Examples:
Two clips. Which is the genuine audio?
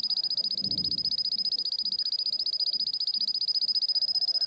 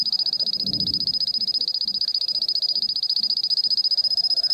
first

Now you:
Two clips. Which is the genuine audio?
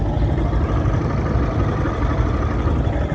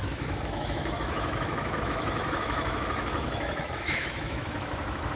first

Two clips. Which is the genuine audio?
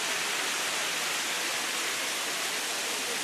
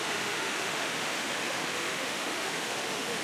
first